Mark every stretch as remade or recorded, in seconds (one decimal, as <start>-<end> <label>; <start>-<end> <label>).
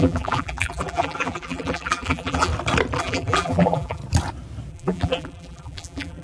0.0-2.5 remade; 2.5-3.0 recorded; 3.0-4.0 remade; 4.0-4.7 recorded; 4.7-6.2 remade